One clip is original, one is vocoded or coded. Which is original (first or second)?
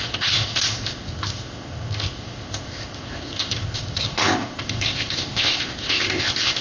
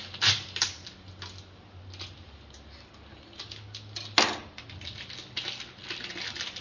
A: second